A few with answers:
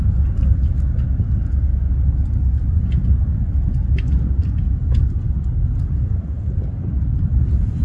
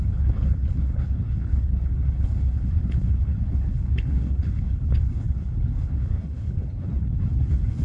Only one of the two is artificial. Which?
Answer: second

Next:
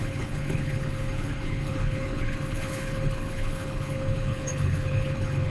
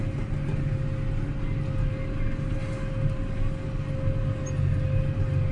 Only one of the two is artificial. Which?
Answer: first